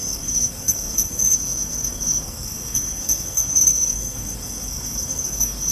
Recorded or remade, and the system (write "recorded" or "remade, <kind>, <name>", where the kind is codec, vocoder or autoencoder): remade, codec, SNAC